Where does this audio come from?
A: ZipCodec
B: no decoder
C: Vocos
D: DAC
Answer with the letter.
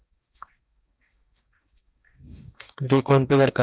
D